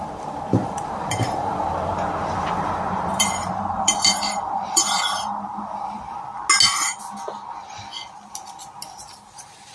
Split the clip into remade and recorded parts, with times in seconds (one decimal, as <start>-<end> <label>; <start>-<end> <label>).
0.0-6.3 remade; 6.3-9.0 recorded; 9.0-9.7 remade